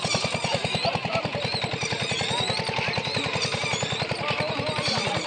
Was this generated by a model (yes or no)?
no